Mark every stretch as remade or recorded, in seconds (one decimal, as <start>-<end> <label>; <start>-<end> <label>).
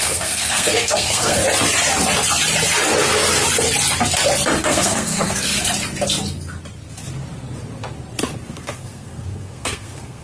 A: 0.0-1.4 remade; 1.4-4.6 recorded; 4.6-5.5 remade; 5.5-8.5 recorded; 8.5-10.2 remade